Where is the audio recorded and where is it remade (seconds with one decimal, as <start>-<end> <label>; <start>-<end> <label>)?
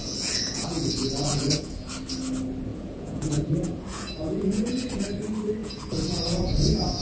0.0-1.9 remade; 1.9-2.7 recorded; 2.7-3.5 remade; 3.5-3.9 recorded; 3.9-5.0 remade; 5.0-5.6 recorded; 5.6-6.5 remade; 6.5-7.0 recorded